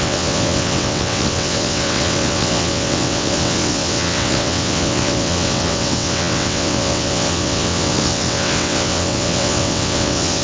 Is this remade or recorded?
remade